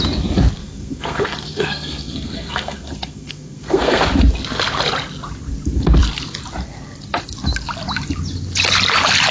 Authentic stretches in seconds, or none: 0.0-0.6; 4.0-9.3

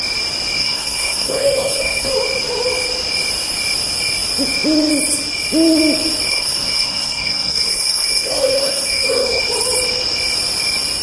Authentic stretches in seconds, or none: 0.0-0.6; 2.1-6.3; 9.4-11.0

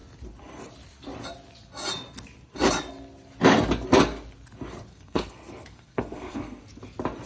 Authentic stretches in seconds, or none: 0.0-4.9; 6.6-7.3

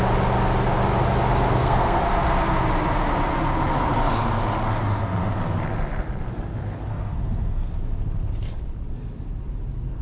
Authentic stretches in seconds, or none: 0.0-1.5; 2.0-6.9; 7.7-10.0

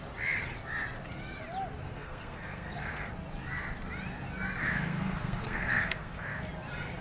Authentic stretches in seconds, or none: 0.0-1.8; 3.1-4.6; 6.4-7.0

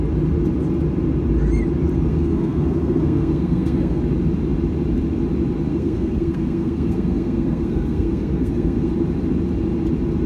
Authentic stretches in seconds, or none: 0.0-2.1; 4.0-5.7; 8.9-10.3

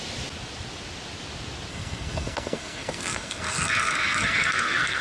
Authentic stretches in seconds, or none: 0.0-1.7

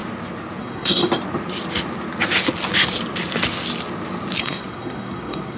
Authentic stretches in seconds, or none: 0.0-0.6; 1.0-4.4